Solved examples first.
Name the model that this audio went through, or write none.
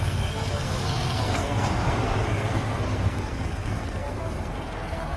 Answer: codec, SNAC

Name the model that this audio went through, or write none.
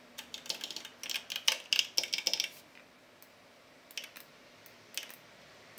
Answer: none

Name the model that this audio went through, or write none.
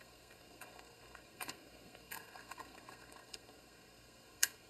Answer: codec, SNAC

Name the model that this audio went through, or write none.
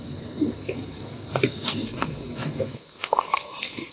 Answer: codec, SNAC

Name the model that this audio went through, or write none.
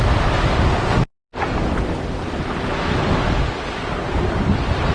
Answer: none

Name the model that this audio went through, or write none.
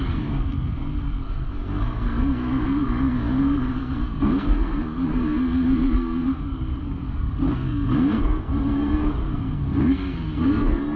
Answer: codec, SNAC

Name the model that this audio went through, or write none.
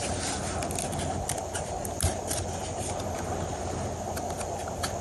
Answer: none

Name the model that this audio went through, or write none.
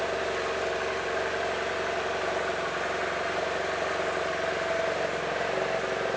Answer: none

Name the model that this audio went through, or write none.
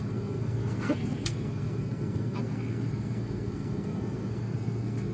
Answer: codec, SNAC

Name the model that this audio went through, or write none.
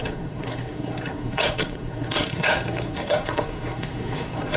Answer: codec, SNAC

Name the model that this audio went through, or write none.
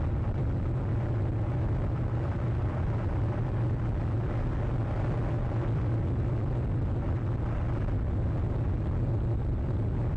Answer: none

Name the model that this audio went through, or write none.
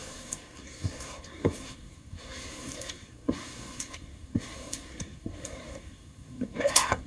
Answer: codec, SNAC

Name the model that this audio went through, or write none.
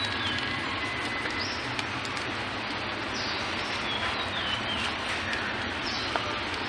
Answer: none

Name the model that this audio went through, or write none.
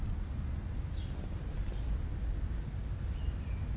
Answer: none